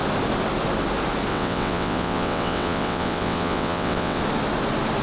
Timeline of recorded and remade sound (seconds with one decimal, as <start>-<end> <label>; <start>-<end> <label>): 0.0-1.3 recorded; 1.3-4.2 remade; 4.2-5.0 recorded